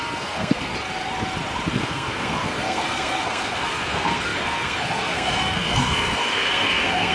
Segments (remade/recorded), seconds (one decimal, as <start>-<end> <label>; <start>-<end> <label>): 0.0-0.7 remade; 0.7-1.7 recorded; 1.7-7.1 remade